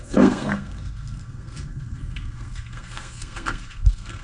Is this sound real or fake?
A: fake